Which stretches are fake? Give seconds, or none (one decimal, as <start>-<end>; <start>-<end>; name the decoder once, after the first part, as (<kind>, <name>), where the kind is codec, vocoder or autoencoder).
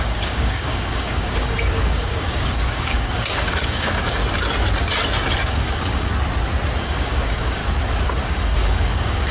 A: 0.0-4.2 (codec, DAC); 5.5-6.1; 6.8-7.6; 8.2-9.3